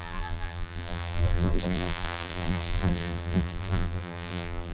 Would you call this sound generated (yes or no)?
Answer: yes